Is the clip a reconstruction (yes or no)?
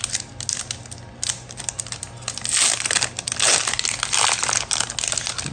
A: no